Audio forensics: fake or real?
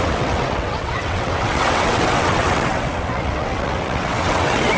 fake